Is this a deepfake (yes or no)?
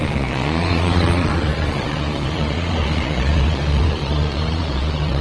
yes